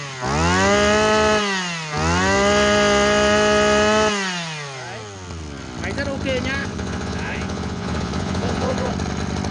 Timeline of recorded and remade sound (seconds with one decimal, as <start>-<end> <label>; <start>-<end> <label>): 0.0-6.6 recorded; 6.6-8.9 remade; 8.9-9.5 recorded